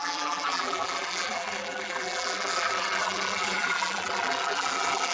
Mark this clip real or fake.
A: fake